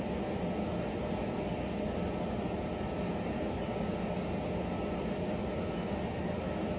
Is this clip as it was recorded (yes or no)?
yes